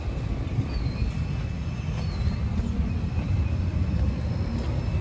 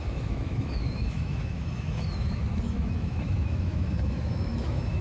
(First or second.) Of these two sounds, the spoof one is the second